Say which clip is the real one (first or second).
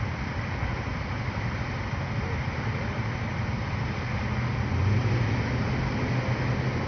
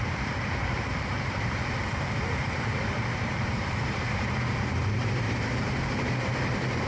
first